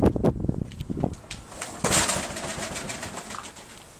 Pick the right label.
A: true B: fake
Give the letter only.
A